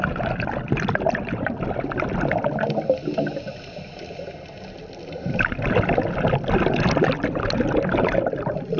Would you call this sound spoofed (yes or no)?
no